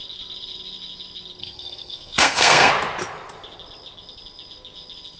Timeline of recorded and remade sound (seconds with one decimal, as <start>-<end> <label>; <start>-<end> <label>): 0.0-1.4 recorded; 1.4-2.7 remade; 2.7-5.2 recorded